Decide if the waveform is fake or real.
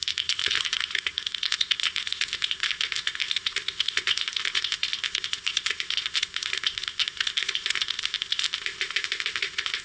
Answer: fake